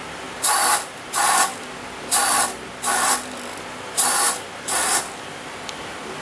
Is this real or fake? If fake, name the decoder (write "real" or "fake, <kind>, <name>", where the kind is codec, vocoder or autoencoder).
fake, vocoder, BigVGAN v2